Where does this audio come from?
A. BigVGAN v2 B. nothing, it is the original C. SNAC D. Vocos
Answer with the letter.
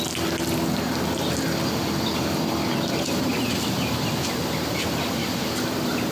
B